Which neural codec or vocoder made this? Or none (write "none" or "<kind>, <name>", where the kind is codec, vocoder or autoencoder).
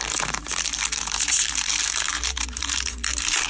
vocoder, BigVGAN v2